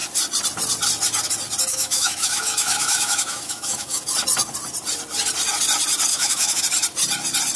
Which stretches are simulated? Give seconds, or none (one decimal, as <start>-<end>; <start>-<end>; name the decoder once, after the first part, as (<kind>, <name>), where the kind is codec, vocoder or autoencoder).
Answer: 1.7-4.0 (autoencoder, DAC-VAE); 6.1-6.6